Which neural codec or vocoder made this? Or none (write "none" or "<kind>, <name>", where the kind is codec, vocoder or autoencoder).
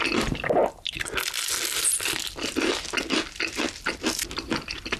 none